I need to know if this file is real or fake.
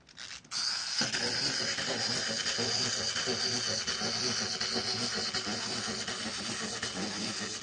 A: real